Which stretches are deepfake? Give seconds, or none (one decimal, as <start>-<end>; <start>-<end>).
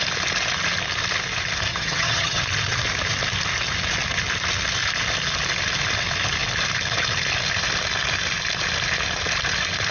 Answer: 1.7-2.4